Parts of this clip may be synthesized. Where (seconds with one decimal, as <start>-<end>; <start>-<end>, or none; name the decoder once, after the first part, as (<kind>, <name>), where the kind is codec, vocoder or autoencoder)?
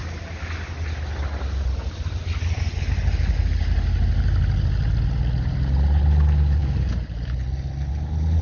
none